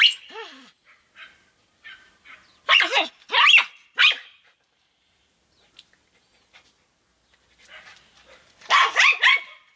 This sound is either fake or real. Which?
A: real